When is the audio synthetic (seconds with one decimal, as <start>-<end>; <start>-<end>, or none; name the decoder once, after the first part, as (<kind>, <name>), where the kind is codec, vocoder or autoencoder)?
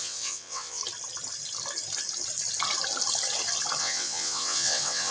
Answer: 0.0-0.8 (vocoder, WaveNeXt); 3.8-5.1